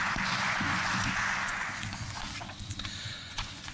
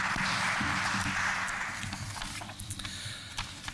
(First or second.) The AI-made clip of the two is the first